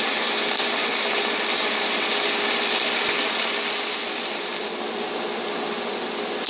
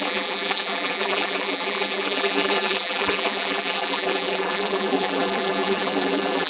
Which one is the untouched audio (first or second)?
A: first